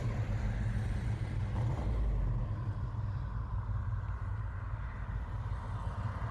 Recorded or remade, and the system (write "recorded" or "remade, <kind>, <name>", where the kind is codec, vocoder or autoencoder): recorded